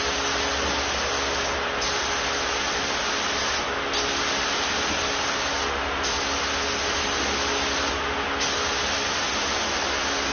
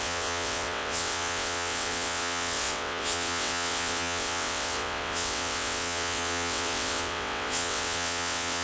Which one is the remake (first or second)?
second